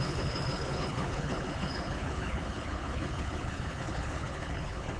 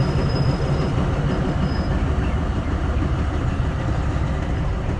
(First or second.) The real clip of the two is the second